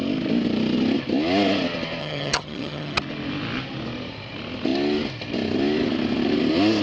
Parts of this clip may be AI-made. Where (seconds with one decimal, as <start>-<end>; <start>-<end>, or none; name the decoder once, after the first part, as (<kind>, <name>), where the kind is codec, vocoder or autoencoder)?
2.0-3.0 (vocoder, HiFi-GAN)